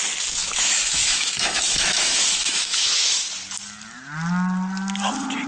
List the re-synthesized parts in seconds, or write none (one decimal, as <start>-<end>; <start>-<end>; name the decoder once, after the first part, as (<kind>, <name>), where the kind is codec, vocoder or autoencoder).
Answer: 0.4-3.3 (autoencoder, DAC-VAE)